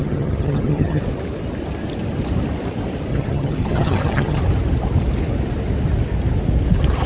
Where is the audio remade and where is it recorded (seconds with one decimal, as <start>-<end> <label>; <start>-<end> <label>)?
0.0-1.0 remade; 1.0-3.1 recorded; 3.1-4.4 remade; 4.4-7.1 recorded